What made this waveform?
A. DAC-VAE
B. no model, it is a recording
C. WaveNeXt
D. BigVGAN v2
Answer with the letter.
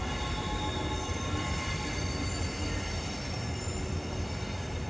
B